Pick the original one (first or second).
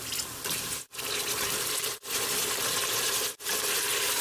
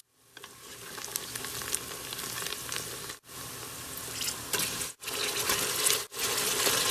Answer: second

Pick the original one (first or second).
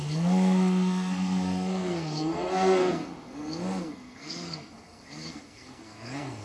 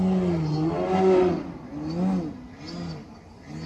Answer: second